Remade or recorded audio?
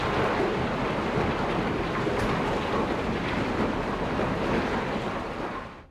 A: recorded